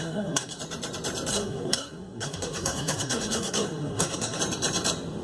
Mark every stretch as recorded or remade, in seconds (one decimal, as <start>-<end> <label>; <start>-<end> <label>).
0.0-0.6 remade; 0.6-1.3 recorded; 1.3-4.4 remade; 4.4-5.2 recorded